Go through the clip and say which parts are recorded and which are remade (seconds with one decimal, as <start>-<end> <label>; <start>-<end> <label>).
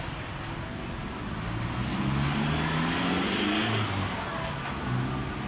0.0-5.5 recorded